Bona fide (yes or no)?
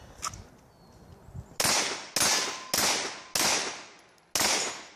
yes